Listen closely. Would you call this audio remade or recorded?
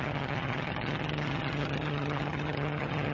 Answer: remade